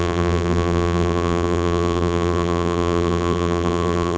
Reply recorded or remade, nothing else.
remade